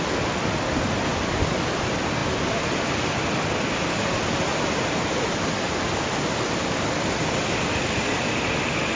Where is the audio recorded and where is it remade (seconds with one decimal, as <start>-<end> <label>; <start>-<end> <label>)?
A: 0.0-9.0 recorded

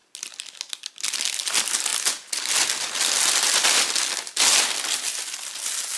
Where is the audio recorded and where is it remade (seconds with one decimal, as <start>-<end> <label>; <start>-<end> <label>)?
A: 0.0-6.0 recorded

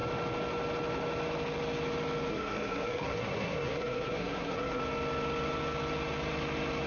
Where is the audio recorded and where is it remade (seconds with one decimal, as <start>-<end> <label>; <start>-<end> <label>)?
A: 0.0-2.3 recorded; 2.3-4.8 remade; 4.8-6.9 recorded

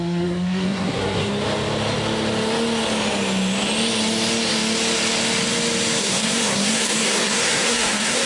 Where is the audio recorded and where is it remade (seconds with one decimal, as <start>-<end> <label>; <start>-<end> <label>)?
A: 0.0-1.3 remade; 1.3-6.0 recorded; 6.0-8.3 remade